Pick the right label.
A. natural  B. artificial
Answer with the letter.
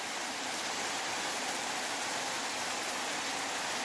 B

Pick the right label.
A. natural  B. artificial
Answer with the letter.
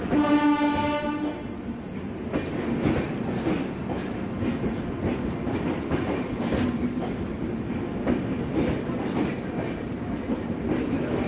A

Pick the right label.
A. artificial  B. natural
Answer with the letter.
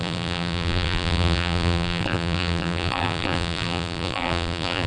A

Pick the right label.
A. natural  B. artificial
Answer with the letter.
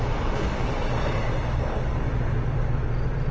B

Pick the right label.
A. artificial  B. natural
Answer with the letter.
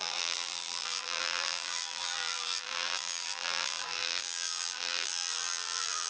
A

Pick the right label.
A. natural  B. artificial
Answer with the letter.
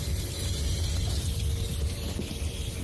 B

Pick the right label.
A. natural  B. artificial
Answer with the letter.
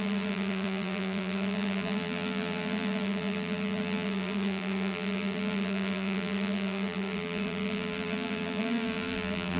B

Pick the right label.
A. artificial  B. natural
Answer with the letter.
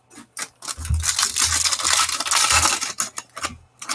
B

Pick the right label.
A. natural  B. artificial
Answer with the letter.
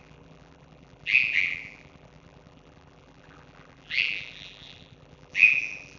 B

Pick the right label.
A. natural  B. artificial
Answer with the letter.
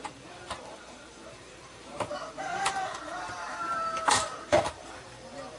B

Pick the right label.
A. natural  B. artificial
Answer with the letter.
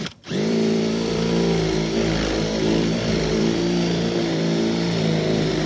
B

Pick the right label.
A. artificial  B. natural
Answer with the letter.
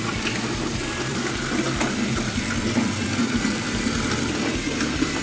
A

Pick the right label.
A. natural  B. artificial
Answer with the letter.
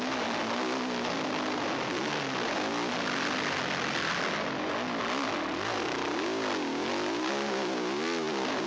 A